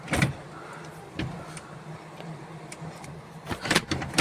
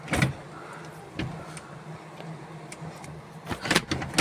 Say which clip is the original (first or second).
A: second